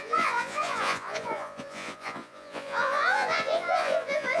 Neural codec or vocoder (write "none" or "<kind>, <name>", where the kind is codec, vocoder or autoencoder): vocoder, Vocos